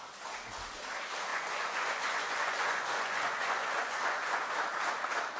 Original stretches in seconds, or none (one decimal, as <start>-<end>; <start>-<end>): 0.0-1.3; 4.5-5.4